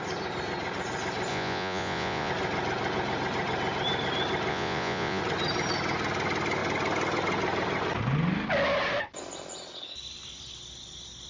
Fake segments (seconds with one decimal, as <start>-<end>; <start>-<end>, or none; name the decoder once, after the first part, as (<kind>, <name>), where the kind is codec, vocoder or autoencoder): 1.3-2.3 (vocoder, Vocos); 4.5-5.2